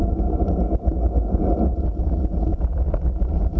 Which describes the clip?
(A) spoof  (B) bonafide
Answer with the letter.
B